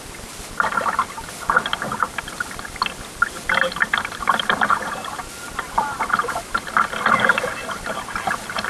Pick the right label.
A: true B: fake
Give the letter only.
A